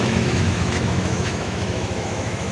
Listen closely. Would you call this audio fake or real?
fake